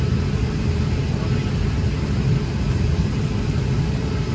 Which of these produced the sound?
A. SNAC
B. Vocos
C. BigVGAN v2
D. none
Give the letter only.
C